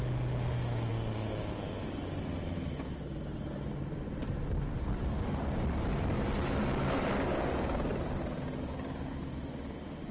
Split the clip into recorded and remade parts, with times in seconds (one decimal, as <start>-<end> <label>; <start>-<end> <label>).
0.0-10.1 recorded